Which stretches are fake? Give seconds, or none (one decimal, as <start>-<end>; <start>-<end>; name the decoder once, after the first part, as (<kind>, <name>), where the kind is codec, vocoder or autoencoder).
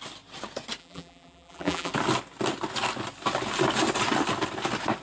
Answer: 0.8-1.9 (vocoder, BigVGAN v2)